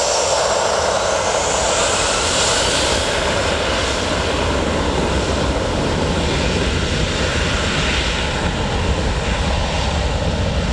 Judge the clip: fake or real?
real